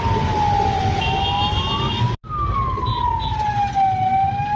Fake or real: real